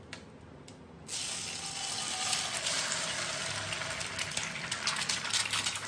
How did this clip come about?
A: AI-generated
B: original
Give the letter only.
B